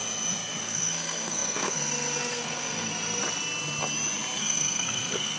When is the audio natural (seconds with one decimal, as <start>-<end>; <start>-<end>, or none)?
0.0-0.6; 2.9-4.4